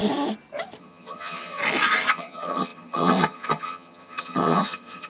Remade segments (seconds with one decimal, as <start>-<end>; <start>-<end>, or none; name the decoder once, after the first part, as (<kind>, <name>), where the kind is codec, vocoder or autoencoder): 0.8-1.6 (vocoder, HiFi-GAN); 2.1-5.1